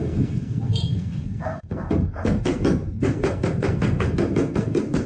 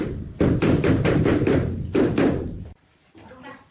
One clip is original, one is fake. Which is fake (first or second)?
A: first